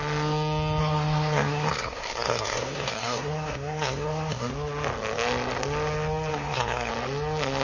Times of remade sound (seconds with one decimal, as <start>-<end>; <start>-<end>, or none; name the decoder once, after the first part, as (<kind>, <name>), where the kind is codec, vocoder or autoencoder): 0.8-4.5 (codec, SNAC); 6.3-6.9